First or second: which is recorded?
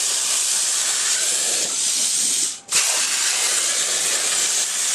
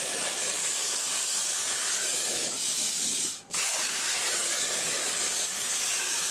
first